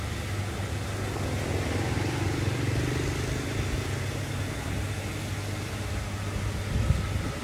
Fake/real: real